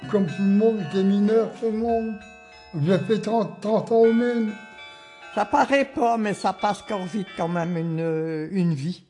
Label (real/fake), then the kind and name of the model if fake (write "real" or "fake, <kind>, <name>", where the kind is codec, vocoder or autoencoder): real